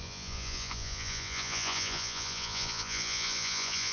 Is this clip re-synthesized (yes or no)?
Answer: yes